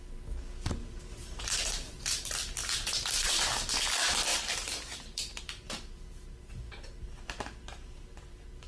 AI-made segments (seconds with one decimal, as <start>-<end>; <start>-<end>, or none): 0.8-3.3; 4.3-8.7